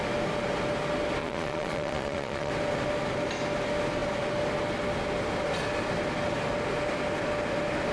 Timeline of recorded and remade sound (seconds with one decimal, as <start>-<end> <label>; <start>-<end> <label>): 0.0-1.2 recorded; 1.2-2.5 remade; 2.5-7.9 recorded